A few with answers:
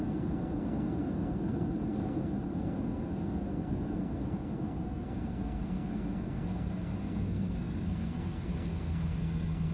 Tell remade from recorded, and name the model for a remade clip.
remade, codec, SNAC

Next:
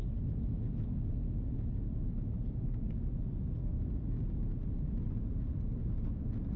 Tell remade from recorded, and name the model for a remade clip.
recorded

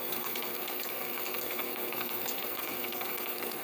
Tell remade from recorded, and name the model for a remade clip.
remade, codec, SNAC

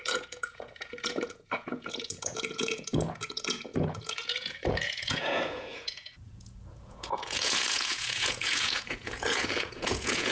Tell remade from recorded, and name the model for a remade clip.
remade, vocoder, Vocos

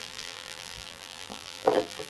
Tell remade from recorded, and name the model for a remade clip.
remade, vocoder, BigVGAN v2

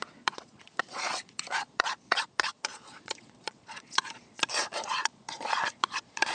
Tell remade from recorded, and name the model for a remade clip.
remade, vocoder, Vocos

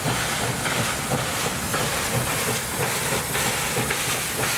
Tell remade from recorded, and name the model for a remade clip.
recorded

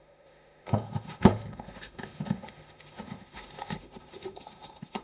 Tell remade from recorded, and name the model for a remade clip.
remade, autoencoder, DAC-VAE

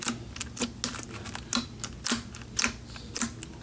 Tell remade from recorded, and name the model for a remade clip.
recorded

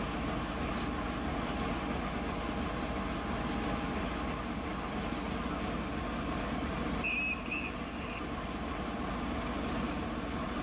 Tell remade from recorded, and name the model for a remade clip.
recorded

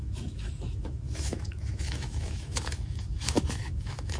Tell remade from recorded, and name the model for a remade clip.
remade, autoencoder, DAC-VAE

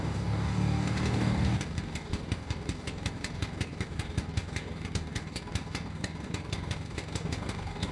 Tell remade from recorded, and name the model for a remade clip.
remade, codec, DAC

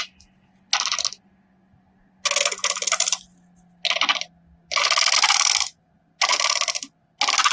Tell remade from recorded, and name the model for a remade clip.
recorded